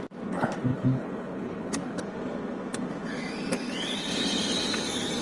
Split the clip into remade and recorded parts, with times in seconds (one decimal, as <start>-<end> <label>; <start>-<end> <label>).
0.0-0.7 recorded; 0.7-2.0 remade; 2.0-5.2 recorded

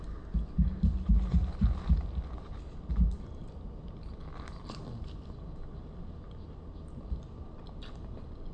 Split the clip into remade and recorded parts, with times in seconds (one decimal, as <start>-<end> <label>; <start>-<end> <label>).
0.0-8.5 recorded

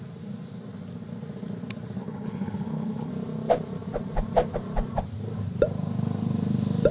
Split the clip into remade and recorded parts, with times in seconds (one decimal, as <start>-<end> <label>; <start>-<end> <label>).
0.0-2.0 recorded; 2.0-3.1 remade; 3.1-6.9 recorded

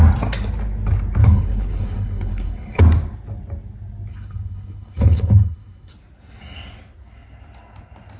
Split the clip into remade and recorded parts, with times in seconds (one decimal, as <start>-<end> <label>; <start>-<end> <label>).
0.0-1.2 recorded; 1.2-2.8 remade; 2.8-4.1 recorded; 4.1-5.9 remade; 5.9-8.2 recorded

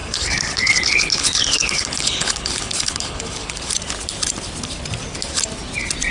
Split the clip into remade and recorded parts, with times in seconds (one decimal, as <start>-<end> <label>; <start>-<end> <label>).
0.0-3.7 remade; 3.7-6.1 recorded

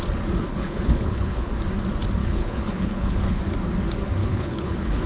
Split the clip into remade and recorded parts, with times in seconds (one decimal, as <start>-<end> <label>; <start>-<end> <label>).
0.0-0.5 recorded; 0.5-1.5 remade; 1.5-2.2 recorded; 2.2-3.4 remade; 3.4-4.2 recorded; 4.2-5.1 remade